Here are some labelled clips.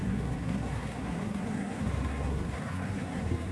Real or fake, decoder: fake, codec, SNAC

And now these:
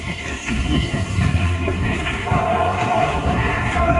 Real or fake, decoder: fake, codec, SNAC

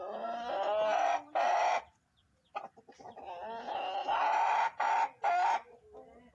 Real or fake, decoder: real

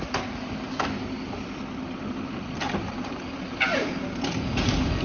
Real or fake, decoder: real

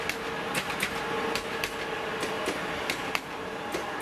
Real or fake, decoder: real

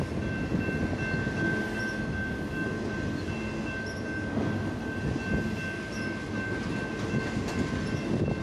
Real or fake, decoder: real